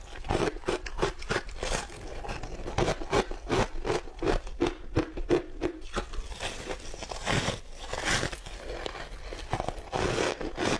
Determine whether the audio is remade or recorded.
recorded